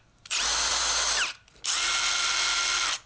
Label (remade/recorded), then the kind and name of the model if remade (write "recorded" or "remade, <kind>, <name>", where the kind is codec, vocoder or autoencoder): recorded